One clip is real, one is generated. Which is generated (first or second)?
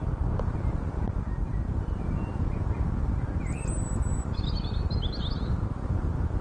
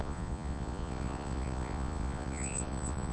second